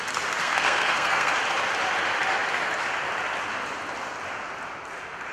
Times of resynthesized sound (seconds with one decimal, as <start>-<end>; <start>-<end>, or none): 0.4-1.3